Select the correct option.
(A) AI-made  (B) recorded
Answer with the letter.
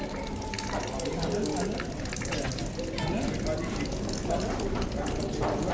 B